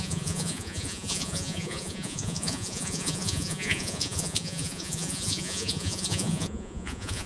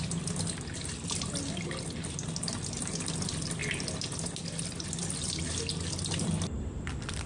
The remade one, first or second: first